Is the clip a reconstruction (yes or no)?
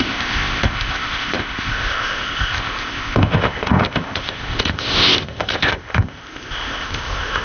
yes